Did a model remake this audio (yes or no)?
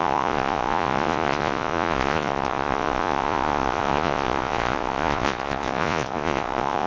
yes